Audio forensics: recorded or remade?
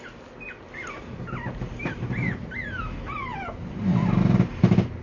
recorded